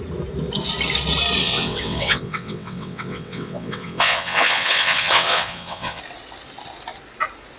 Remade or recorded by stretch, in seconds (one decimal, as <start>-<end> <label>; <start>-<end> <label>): 0.0-1.4 recorded; 1.4-6.0 remade; 6.0-7.6 recorded